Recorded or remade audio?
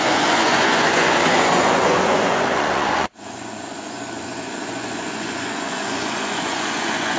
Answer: remade